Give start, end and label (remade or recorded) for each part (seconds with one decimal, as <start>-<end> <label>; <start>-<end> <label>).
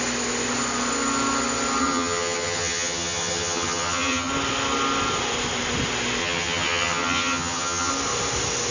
0.0-1.8 recorded; 1.8-4.3 remade; 4.3-6.2 recorded; 6.2-7.9 remade; 7.9-8.7 recorded